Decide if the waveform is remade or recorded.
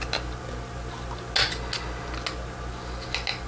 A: recorded